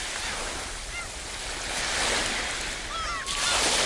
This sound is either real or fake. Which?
real